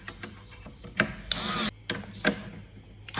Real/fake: real